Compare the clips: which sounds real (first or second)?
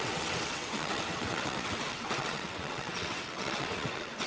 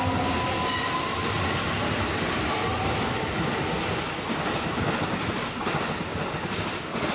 second